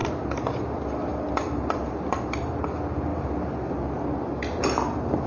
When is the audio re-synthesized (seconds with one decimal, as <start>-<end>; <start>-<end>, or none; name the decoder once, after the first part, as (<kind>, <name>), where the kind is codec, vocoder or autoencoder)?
none